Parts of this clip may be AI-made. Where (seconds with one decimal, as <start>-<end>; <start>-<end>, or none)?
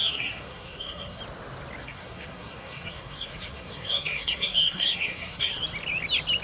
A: 0.0-1.2; 1.8-5.6